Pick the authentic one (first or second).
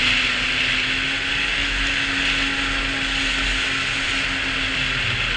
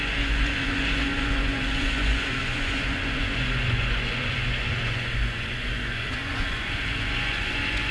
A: first